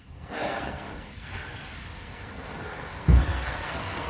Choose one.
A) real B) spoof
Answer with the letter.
B